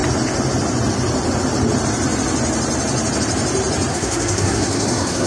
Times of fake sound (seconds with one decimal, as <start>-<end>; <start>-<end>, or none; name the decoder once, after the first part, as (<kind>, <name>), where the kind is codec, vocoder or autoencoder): 3.9-5.3 (codec, SNAC)